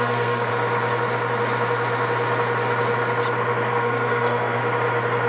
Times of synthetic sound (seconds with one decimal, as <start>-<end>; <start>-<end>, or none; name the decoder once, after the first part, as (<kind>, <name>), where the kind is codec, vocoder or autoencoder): 0.0-0.5 (codec, SNAC); 3.7-4.6